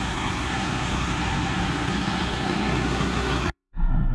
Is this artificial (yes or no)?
yes